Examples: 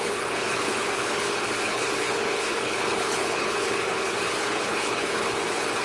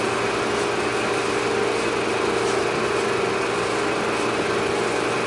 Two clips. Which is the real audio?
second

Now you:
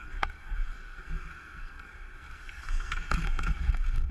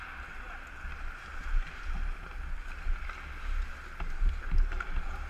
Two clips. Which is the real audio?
second